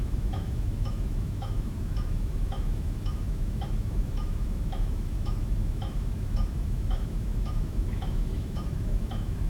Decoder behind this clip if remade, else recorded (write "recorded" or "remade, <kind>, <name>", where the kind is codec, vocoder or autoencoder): remade, autoencoder, DAC-VAE